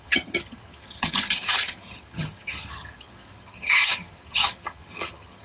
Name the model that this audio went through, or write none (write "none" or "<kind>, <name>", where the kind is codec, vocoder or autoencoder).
vocoder, HiFi-GAN